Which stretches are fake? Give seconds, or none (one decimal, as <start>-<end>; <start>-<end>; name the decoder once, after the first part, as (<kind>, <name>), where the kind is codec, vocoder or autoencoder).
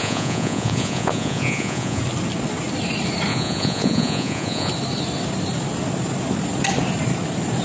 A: 0.0-2.0 (vocoder, Vocos); 3.3-4.7